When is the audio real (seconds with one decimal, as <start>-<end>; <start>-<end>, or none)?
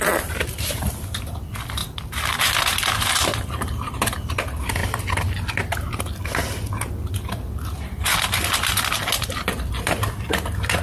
1.8-3.5; 4.8-6.0